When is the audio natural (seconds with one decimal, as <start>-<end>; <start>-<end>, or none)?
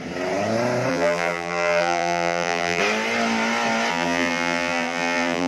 0.0-0.9; 2.8-3.9